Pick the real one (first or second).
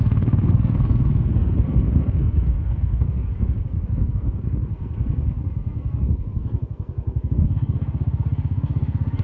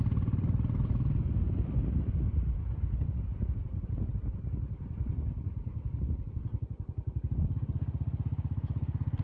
second